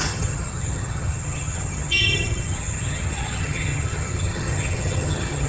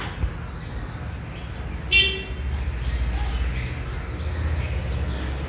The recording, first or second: second